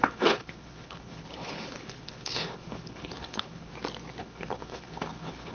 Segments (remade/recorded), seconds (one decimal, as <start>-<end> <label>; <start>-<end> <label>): 0.0-3.7 remade; 3.7-4.2 recorded; 4.2-5.5 remade